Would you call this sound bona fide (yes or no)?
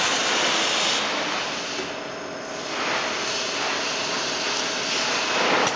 yes